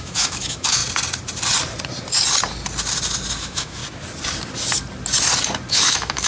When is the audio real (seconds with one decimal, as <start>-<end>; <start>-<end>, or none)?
0.8-3.4; 3.8-5.7